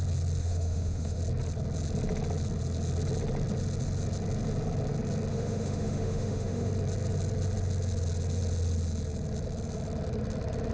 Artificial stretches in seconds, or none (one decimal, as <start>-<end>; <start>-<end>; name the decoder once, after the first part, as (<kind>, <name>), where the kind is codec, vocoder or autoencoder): 0.4-1.2 (autoencoder, DAC-VAE); 5.3-6.7